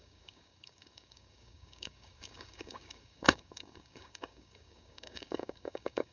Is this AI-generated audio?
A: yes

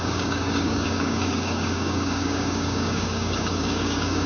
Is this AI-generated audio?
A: yes